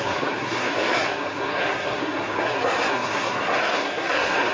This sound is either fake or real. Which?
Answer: fake